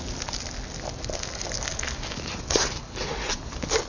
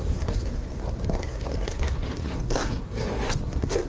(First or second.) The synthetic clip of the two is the second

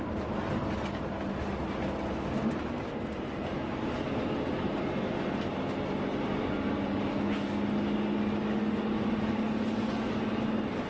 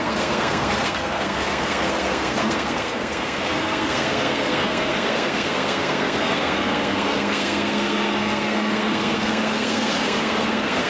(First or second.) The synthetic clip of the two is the second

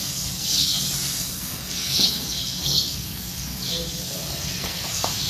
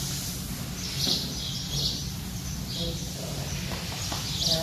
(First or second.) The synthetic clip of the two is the first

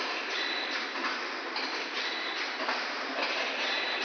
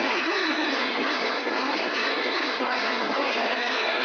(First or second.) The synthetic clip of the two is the second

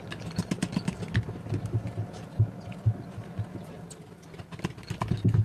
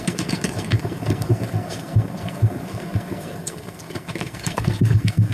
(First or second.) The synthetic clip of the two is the second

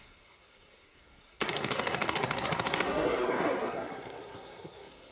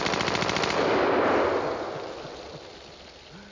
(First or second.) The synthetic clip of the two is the first